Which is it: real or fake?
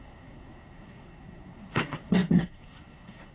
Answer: fake